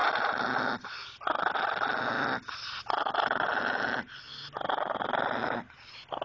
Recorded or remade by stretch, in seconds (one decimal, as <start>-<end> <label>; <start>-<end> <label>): 0.0-6.2 recorded